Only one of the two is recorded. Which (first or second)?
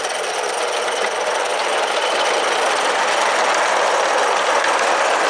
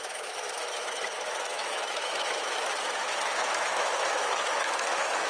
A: first